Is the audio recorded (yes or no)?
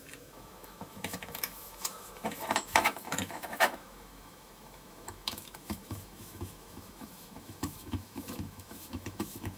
no